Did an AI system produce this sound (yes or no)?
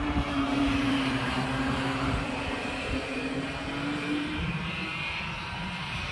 yes